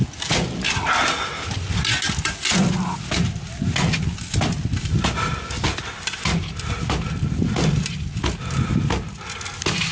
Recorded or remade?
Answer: recorded